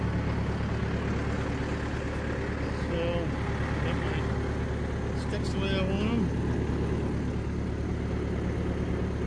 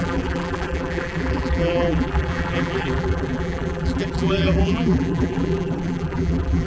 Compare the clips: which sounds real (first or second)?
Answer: first